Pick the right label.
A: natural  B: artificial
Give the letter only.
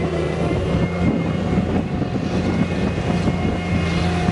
B